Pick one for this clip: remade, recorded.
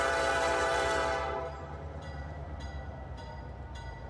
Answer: remade